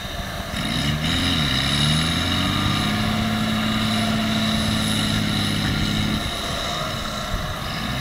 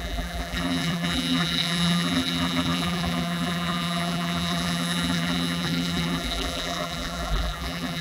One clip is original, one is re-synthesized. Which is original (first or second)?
first